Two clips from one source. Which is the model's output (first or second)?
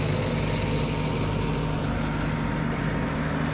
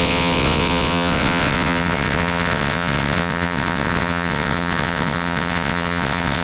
second